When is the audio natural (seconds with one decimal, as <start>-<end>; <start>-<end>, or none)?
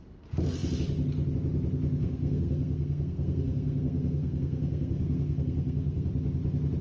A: 0.0-2.0; 6.1-6.8